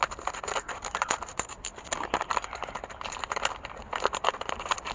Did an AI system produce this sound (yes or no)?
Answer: no